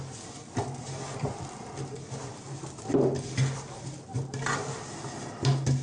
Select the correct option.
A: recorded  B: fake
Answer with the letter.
A